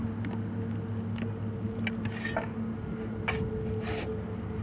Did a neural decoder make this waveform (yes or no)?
no